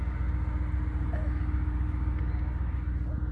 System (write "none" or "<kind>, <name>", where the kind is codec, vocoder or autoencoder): none